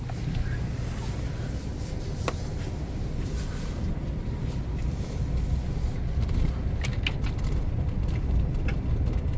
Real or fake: real